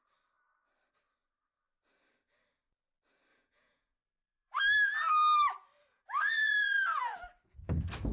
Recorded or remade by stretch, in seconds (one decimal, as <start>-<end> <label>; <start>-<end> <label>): 0.0-3.3 recorded; 3.3-4.6 remade; 4.6-5.9 recorded; 5.9-7.0 remade; 7.0-8.1 recorded